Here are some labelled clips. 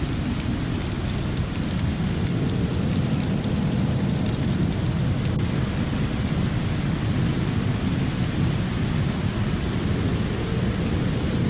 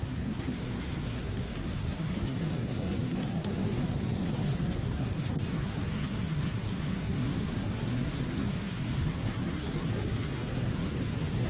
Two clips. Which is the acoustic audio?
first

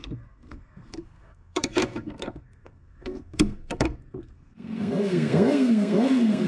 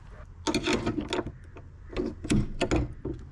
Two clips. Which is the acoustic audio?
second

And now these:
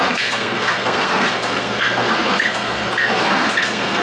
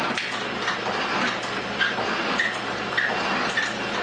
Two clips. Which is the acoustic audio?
second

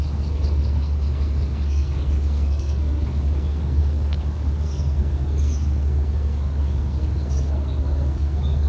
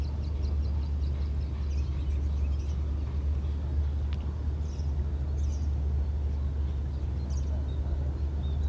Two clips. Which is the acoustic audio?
second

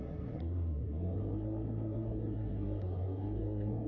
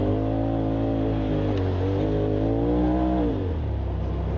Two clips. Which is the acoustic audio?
second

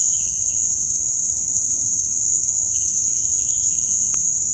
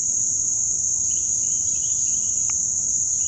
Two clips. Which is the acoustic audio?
second